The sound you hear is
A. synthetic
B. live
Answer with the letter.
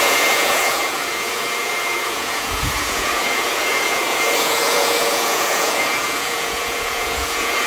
A